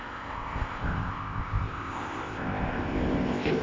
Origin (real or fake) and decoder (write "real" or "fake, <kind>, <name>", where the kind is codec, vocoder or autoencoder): fake, codec, ZipCodec